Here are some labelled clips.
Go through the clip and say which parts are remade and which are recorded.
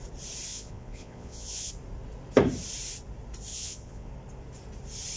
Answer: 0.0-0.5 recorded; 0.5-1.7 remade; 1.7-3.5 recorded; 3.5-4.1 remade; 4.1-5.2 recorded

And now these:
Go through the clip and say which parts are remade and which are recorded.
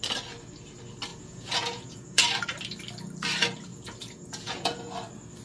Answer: 0.0-1.1 recorded; 1.1-2.2 remade; 2.2-3.7 recorded; 3.7-4.9 remade; 4.9-5.4 recorded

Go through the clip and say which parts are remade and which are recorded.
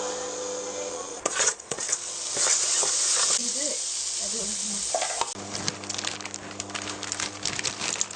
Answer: 0.0-0.9 recorded; 0.9-1.8 remade; 1.8-8.2 recorded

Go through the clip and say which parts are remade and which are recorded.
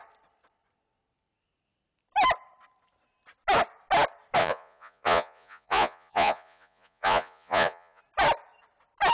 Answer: 0.0-4.4 recorded; 4.4-8.0 remade; 8.0-9.1 recorded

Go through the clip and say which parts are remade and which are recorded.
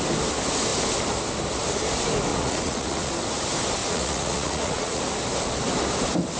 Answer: 0.0-2.3 recorded; 2.3-3.1 remade; 3.1-3.8 recorded; 3.8-5.0 remade; 5.0-6.4 recorded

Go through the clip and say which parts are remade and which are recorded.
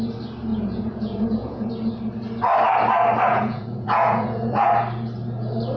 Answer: 0.0-0.5 recorded; 0.5-1.7 remade; 1.7-3.3 recorded; 3.3-4.7 remade; 4.7-5.8 recorded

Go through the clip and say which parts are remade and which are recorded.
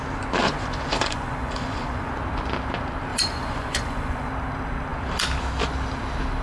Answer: 0.0-0.4 recorded; 0.4-2.1 remade; 2.1-3.1 recorded; 3.1-4.3 remade; 4.3-6.4 recorded